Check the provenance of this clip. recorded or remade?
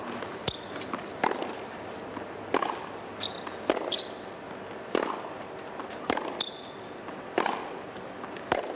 recorded